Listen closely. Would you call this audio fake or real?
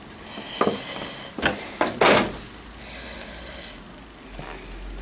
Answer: real